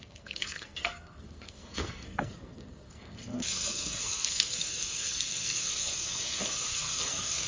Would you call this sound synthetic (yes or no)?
yes